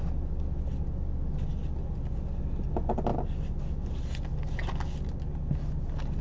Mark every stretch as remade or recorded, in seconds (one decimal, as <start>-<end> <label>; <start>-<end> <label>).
0.0-6.2 recorded